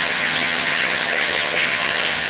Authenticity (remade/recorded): remade